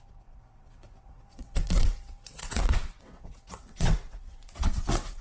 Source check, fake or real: fake